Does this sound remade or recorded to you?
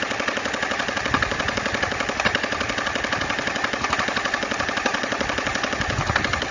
recorded